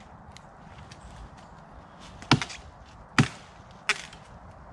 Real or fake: real